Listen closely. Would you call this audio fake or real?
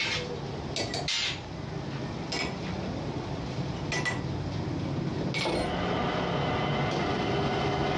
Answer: real